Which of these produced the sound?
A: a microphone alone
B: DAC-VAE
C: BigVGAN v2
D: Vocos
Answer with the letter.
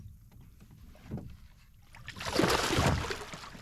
A